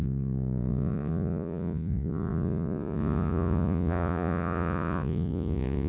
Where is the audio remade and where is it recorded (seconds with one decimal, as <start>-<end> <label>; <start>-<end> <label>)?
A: 0.0-5.9 remade